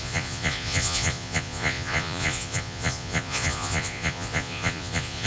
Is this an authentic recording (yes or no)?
no